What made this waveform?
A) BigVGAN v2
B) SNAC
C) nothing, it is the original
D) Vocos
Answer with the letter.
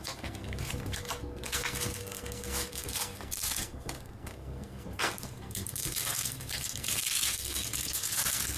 B